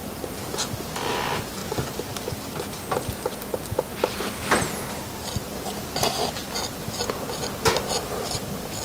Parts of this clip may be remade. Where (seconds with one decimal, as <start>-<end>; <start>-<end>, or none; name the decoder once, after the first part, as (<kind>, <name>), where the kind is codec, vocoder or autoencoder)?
none